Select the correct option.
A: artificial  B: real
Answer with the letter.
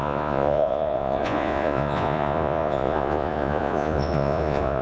A